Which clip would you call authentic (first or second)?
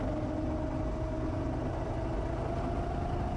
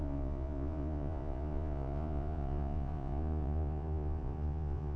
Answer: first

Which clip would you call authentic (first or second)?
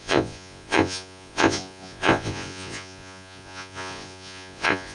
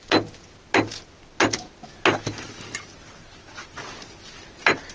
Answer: second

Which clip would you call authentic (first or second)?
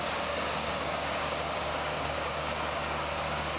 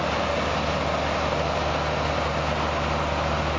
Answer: second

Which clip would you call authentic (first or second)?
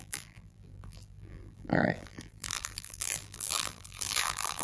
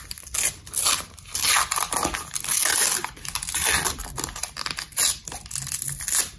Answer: second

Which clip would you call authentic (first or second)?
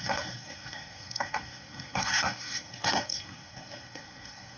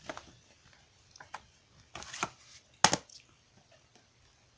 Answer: second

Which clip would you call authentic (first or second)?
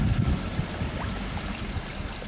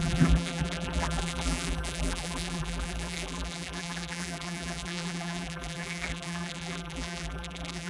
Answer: first